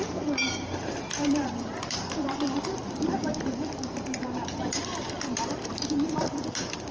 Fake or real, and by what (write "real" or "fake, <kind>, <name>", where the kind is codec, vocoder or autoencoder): fake, vocoder, BigVGAN v2